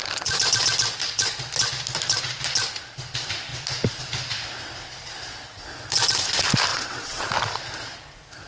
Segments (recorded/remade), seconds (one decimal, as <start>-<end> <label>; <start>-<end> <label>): 0.0-6.7 recorded; 6.7-7.2 remade; 7.2-8.5 recorded